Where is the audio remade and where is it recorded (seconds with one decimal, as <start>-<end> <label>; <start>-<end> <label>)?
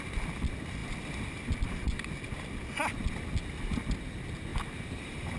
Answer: 0.0-4.5 recorded; 4.5-5.4 remade